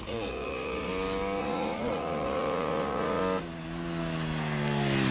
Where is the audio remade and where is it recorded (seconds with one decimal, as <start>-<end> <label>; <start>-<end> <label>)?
0.0-0.9 remade; 0.9-1.4 recorded; 1.4-3.2 remade; 3.2-5.1 recorded